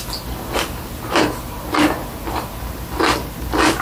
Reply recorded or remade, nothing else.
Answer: recorded